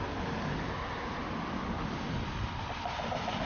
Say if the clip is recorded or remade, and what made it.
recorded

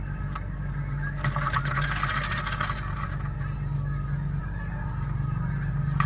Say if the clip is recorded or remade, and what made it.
recorded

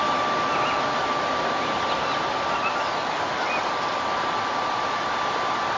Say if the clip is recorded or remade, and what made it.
recorded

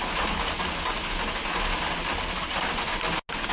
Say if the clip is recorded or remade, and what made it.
recorded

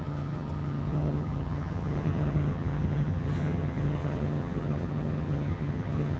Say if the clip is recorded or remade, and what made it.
remade, vocoder, HiFi-GAN